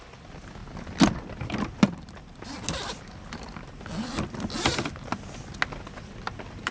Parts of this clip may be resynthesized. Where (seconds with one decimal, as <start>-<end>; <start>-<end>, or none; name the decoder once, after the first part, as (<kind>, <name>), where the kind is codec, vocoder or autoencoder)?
none